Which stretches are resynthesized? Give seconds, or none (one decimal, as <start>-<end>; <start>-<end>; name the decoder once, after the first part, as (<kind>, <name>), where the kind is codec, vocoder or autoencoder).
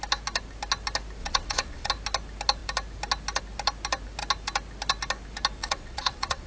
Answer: 1.2-1.9 (vocoder, WaveNeXt); 5.6-6.5